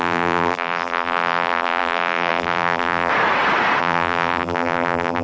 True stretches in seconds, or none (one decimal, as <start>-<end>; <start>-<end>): 3.1-3.8